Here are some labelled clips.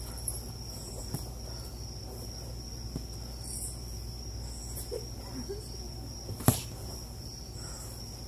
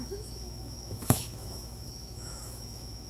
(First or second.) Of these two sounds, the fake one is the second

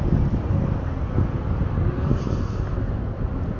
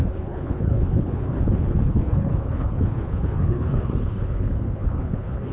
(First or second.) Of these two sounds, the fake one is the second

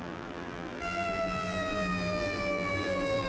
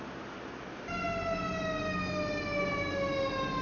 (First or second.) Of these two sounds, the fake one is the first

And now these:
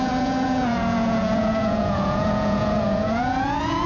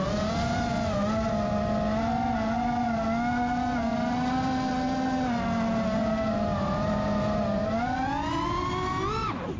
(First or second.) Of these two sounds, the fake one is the first